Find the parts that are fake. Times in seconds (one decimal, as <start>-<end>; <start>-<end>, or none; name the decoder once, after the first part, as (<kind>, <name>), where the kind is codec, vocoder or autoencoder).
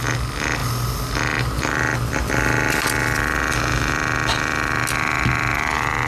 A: none